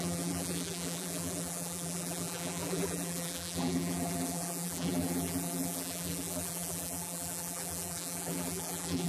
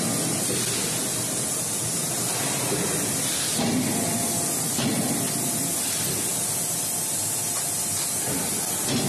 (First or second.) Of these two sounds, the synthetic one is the first